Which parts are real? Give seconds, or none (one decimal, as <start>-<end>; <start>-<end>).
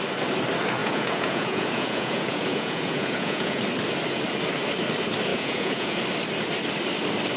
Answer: 0.0-0.8; 3.6-5.3; 6.0-7.4